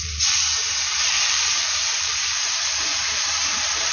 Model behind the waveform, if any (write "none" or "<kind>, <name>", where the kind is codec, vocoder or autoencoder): vocoder, BigVGAN v2